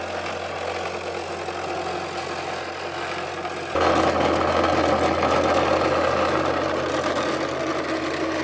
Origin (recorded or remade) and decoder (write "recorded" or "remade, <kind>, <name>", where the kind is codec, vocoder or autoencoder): recorded